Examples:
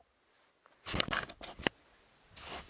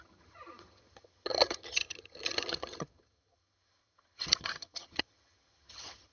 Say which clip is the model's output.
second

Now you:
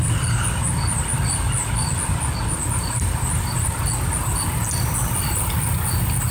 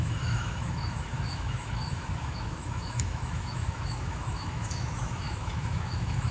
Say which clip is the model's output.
second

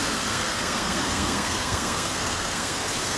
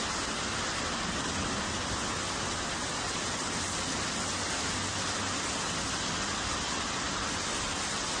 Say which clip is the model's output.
first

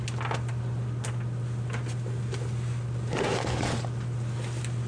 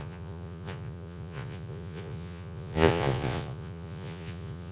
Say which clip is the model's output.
second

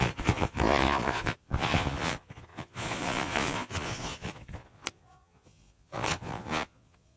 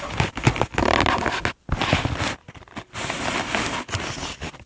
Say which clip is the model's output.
first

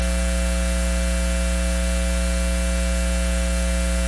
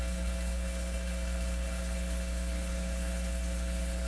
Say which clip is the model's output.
second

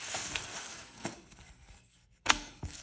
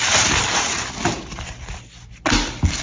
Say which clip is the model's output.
first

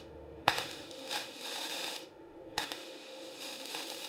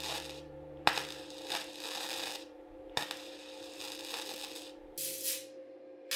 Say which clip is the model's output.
first